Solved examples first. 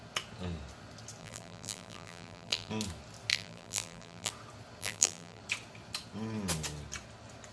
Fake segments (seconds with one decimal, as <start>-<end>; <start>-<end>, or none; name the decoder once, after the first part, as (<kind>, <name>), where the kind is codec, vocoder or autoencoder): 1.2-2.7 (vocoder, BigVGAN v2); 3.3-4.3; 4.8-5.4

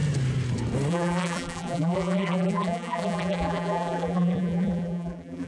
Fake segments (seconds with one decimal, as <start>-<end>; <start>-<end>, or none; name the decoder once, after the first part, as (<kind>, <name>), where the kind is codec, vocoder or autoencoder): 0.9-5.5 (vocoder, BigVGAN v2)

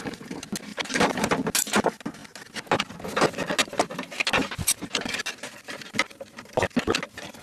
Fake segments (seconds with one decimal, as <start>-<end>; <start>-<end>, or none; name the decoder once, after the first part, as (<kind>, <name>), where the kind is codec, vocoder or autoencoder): 0.7-1.3 (vocoder, BigVGAN v2); 3.6-5.2

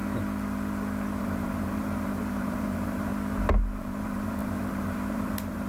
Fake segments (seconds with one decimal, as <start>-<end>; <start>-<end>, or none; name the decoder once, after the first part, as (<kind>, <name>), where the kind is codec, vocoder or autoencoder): 1.2-3.1 (vocoder, BigVGAN v2); 3.8-5.7

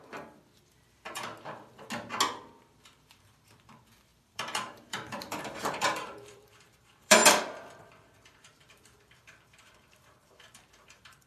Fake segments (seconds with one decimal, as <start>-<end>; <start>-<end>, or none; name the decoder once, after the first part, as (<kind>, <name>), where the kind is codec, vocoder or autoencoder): 0.0-1.3 (vocoder, BigVGAN v2); 2.5-11.3